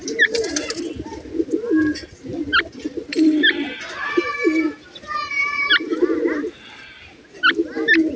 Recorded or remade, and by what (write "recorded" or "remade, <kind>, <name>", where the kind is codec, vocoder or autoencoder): recorded